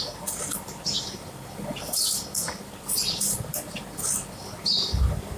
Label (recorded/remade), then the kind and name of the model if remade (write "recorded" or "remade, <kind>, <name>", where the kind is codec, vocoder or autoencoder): recorded